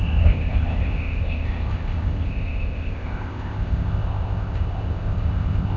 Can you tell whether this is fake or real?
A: fake